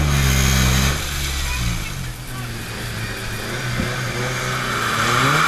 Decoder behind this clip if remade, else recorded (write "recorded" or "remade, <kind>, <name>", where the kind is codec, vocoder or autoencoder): recorded